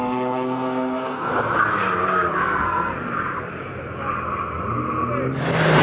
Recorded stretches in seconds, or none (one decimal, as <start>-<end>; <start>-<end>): 1.3-2.3; 2.9-5.8